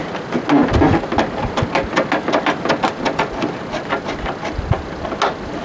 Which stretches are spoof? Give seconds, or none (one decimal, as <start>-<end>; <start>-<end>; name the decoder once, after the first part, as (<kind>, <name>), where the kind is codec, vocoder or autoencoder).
none